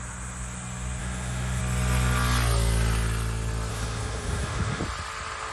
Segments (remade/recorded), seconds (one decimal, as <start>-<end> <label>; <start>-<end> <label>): 0.0-1.0 recorded; 1.0-1.6 remade; 1.6-3.7 recorded; 3.7-4.8 remade; 4.8-5.5 recorded